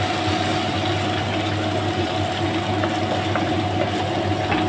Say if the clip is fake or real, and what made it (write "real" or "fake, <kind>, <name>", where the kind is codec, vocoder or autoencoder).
real